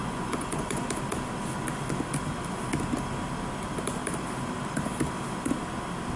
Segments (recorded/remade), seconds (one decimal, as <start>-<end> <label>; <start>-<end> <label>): 0.0-0.9 remade; 0.9-6.2 recorded